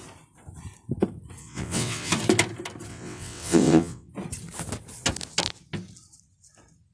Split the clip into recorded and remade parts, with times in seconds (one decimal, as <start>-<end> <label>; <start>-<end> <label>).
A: 0.0-1.4 recorded; 1.4-2.1 remade; 2.1-2.9 recorded; 2.9-4.1 remade; 4.1-6.9 recorded